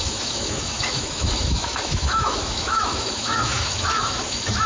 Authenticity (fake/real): fake